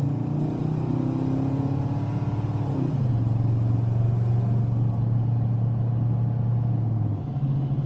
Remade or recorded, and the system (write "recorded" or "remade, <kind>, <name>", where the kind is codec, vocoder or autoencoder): recorded